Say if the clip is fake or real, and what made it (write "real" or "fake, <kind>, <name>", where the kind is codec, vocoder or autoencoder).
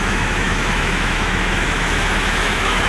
fake, autoencoder, DAC-VAE